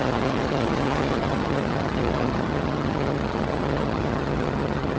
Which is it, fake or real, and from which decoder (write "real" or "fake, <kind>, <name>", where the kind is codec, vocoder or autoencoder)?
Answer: fake, vocoder, HiFi-GAN